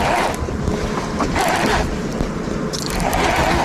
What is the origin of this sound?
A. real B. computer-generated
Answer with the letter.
A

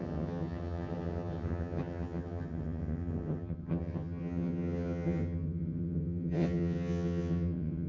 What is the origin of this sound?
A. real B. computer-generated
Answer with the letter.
B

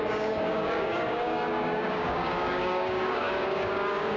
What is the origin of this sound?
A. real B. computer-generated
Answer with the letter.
B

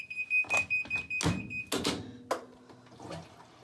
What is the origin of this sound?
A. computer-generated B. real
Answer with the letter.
B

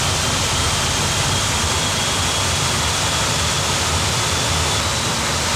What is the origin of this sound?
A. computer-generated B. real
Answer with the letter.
B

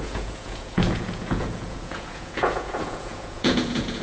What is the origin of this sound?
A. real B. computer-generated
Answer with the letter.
B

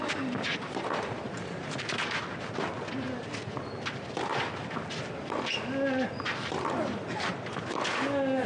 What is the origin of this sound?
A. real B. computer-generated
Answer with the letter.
A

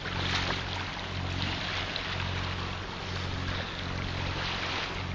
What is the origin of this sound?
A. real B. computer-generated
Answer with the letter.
A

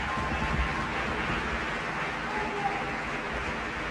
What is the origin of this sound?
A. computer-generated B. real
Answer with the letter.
B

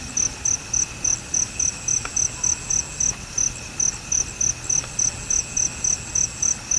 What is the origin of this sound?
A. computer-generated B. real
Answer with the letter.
B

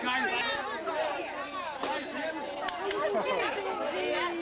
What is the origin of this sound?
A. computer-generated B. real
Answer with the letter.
B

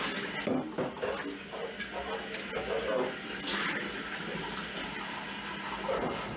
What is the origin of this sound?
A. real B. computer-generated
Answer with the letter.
A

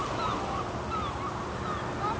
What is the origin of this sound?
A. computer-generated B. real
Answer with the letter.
B